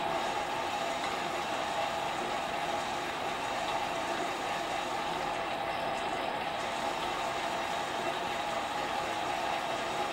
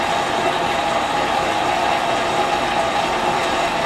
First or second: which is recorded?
second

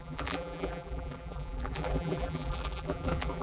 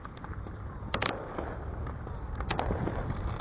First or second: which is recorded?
second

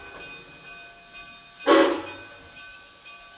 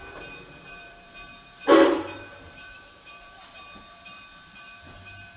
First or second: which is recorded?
first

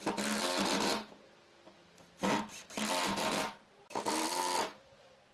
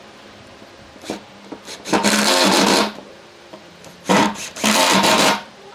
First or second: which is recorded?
first